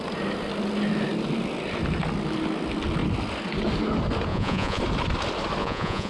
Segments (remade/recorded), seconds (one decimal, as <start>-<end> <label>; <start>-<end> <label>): 0.0-4.3 recorded; 4.3-4.8 remade; 4.8-5.6 recorded; 5.6-6.1 remade